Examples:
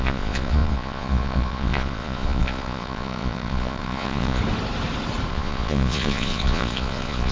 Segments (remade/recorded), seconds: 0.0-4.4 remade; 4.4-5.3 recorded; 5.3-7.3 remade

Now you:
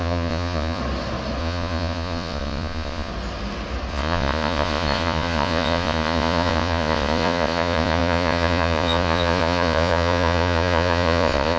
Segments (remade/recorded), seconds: 0.0-0.8 remade; 0.8-1.4 recorded; 1.4-3.1 remade; 3.1-3.9 recorded; 3.9-11.6 remade

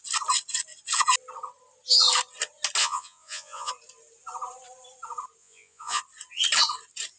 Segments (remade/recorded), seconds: 0.0-2.8 recorded; 2.8-3.7 remade; 3.7-5.4 recorded; 5.4-6.0 remade; 6.0-7.2 recorded

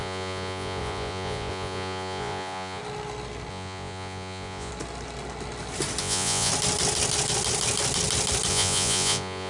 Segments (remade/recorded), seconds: 0.0-2.8 remade; 2.8-3.5 recorded; 3.5-4.7 remade; 4.7-6.0 recorded; 6.0-6.5 remade; 6.5-8.5 recorded; 8.5-9.5 remade

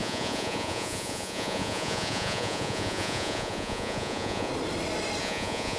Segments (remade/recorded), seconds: 0.0-4.5 remade; 4.5-5.2 recorded; 5.2-5.8 remade